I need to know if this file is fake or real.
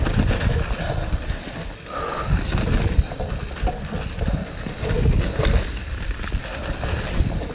real